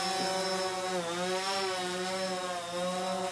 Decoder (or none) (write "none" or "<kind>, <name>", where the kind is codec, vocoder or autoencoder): none